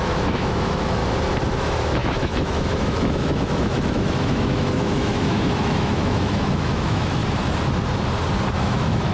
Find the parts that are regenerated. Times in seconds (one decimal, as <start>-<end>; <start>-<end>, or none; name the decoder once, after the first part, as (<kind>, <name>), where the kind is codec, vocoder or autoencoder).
0.0-1.0 (autoencoder, DAC-VAE); 1.6-7.2; 8.5-9.1